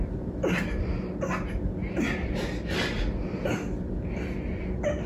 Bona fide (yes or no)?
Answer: yes